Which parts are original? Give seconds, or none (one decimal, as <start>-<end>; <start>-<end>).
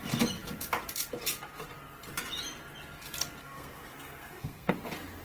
0.0-3.4; 4.7-5.2